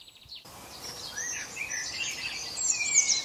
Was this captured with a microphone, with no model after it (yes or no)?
no